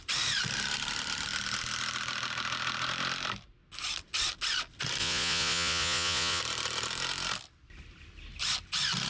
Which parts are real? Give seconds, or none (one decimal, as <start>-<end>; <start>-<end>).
0.0-5.0; 6.4-9.1